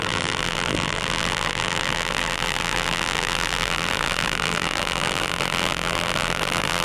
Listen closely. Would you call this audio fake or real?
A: fake